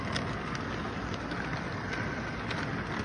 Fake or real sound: real